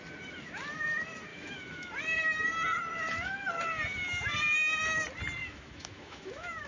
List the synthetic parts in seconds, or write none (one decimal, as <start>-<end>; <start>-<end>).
1.3-1.9; 5.4-6.7